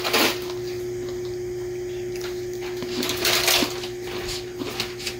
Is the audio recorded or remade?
recorded